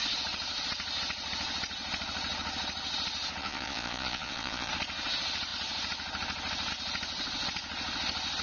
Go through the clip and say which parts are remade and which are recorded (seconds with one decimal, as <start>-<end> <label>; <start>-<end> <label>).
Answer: 0.0-3.4 recorded; 3.4-4.7 remade; 4.7-8.4 recorded